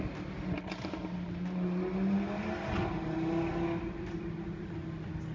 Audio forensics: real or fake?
real